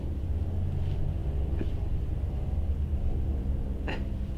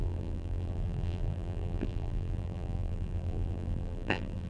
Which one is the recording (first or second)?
first